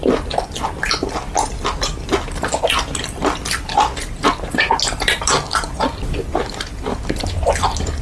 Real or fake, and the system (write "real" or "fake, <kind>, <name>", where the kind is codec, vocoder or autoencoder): real